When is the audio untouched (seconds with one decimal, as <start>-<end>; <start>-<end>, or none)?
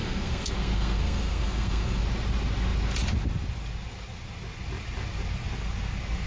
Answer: 2.0-6.3